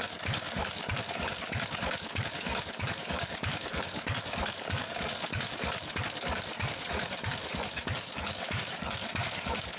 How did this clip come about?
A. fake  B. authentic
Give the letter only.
A